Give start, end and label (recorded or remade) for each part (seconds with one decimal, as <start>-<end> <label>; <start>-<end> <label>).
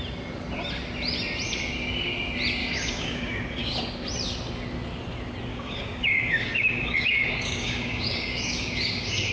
0.0-2.6 recorded; 2.6-3.8 remade; 3.8-5.5 recorded; 5.5-9.3 remade